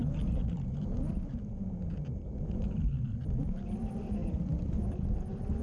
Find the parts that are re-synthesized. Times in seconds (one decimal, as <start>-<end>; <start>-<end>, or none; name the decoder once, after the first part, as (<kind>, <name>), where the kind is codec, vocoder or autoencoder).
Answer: none